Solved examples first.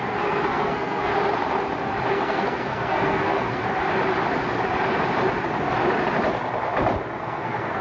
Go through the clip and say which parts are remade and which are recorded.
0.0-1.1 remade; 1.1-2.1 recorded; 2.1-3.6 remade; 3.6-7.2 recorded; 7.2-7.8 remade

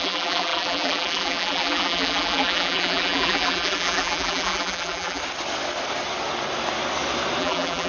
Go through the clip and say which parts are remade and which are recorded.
0.0-5.2 remade; 5.2-7.4 recorded; 7.4-7.9 remade

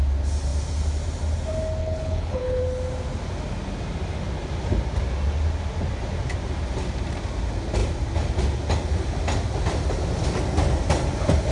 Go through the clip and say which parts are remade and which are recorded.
0.0-1.8 recorded; 1.8-2.6 remade; 2.6-11.5 recorded

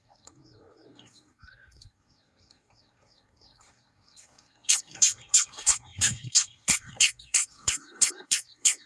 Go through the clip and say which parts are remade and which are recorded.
0.0-8.9 remade

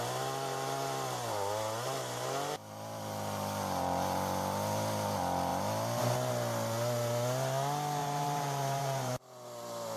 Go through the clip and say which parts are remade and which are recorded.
0.0-8.0 recorded; 8.0-9.2 remade; 9.2-10.0 recorded

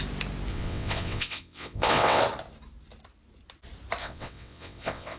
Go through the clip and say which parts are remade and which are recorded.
0.0-0.5 recorded; 0.5-2.2 remade; 2.2-4.0 recorded; 4.0-5.2 remade

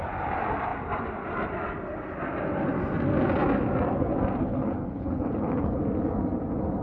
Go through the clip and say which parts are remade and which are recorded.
0.0-4.4 recorded; 4.4-5.8 remade; 5.8-6.8 recorded

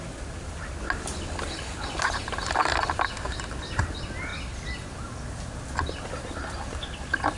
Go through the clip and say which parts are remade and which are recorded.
0.0-7.4 recorded